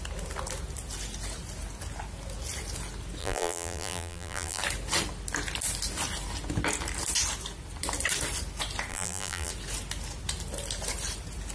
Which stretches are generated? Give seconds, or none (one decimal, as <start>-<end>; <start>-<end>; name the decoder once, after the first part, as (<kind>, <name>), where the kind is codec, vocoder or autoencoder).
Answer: 3.2-4.6 (vocoder, BigVGAN v2); 8.9-9.5